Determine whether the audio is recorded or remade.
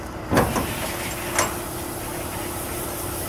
recorded